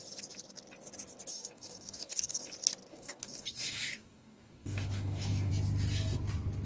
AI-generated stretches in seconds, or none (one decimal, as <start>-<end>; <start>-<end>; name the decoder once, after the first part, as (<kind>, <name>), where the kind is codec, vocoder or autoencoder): 1.3-2.4 (codec, DAC); 2.9-5.5